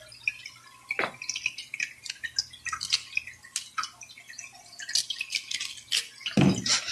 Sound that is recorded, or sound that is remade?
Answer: recorded